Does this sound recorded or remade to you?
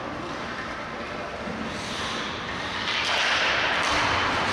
recorded